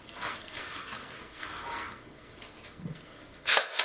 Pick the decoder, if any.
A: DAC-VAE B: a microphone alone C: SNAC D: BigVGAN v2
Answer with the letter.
C